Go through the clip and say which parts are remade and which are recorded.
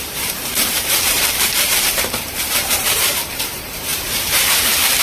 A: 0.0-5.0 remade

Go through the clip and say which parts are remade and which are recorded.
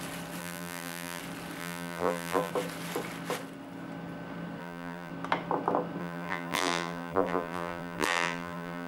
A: 0.0-0.4 recorded; 0.4-1.2 remade; 1.2-1.6 recorded; 1.6-2.5 remade; 2.5-4.6 recorded; 4.6-5.1 remade; 5.1-6.0 recorded; 6.0-8.9 remade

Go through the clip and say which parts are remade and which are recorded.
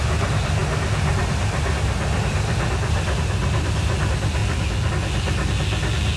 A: 0.0-2.8 recorded; 2.8-4.0 remade; 4.0-6.2 recorded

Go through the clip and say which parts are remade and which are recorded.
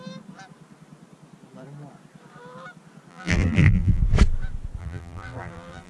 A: 0.0-3.1 recorded; 3.1-4.0 remade; 4.0-4.8 recorded; 4.8-5.9 remade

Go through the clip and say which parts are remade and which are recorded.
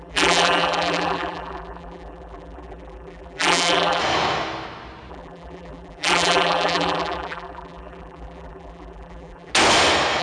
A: 0.0-4.0 remade; 4.0-5.1 recorded; 5.1-9.5 remade; 9.5-10.2 recorded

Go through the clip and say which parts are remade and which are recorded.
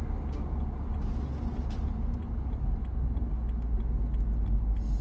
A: 0.0-2.2 recorded; 2.2-3.3 remade; 3.3-5.0 recorded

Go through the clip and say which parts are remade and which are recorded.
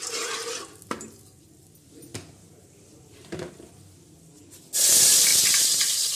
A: 0.0-2.4 recorded; 2.4-3.5 remade; 3.5-5.3 recorded; 5.3-6.2 remade